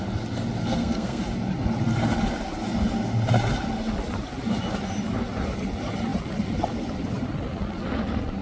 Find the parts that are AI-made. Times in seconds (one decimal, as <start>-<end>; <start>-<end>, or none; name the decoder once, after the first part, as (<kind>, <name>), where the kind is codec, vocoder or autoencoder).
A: 0.6-1.2 (codec, SNAC)